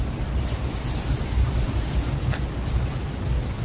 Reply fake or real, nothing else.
real